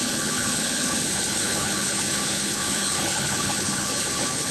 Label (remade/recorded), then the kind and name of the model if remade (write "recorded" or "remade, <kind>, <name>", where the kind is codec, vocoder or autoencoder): remade, codec, HILCodec